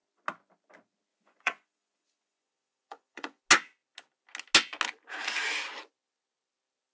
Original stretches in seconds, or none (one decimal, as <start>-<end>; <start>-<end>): 0.0-1.1; 3.4-6.9